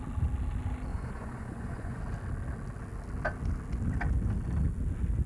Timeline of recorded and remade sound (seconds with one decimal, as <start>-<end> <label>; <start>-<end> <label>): 0.0-0.9 recorded; 0.9-2.0 remade; 2.0-5.3 recorded